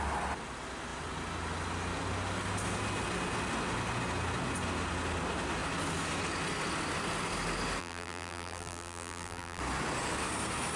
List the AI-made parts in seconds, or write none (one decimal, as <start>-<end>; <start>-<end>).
7.8-9.6